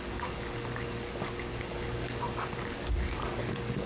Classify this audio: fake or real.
fake